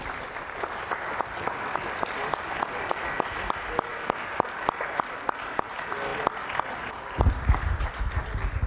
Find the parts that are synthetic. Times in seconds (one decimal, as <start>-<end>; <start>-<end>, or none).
3.9-4.5